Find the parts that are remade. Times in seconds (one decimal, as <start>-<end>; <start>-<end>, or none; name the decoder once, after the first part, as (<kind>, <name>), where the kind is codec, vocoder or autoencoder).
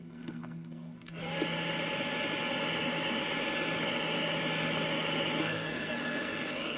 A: 0.0-1.3 (codec, SNAC); 5.4-6.8